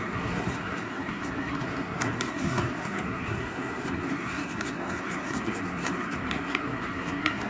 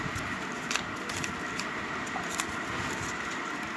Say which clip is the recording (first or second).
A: second